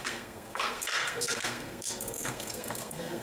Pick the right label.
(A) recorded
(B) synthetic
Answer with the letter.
B